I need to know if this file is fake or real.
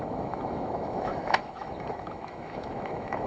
fake